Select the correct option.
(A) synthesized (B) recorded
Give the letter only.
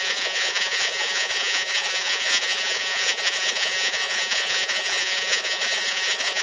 A